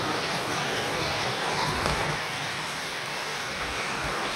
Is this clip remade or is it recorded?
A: remade